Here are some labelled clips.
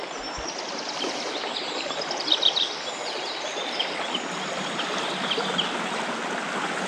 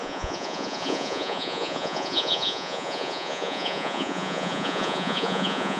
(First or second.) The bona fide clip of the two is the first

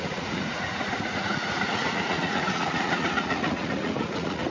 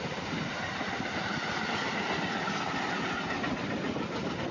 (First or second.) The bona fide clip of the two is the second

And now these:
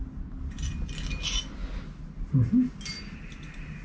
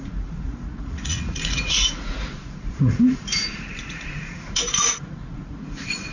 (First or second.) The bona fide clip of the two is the first